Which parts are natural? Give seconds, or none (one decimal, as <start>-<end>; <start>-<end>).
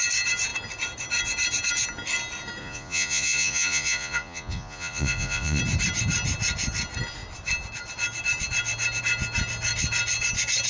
0.0-2.6; 5.6-10.7